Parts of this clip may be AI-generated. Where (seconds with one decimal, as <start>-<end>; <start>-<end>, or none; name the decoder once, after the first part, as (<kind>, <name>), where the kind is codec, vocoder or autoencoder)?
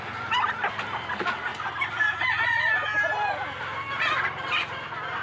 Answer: none